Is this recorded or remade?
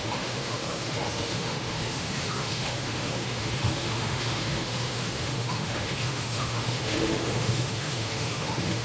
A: remade